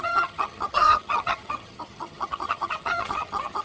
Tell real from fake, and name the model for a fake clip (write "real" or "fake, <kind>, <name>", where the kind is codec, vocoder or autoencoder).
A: fake, vocoder, HiFi-GAN